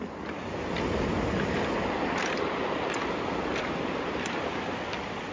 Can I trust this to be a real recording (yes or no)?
yes